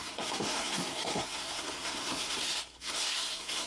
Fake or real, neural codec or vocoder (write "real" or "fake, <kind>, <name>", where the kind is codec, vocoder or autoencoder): fake, codec, SNAC